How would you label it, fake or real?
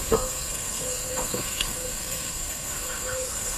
fake